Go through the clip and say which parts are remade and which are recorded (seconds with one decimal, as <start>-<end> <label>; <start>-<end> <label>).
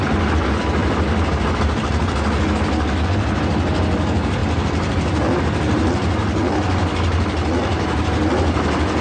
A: 0.0-4.4 recorded; 4.4-5.4 remade; 5.4-9.0 recorded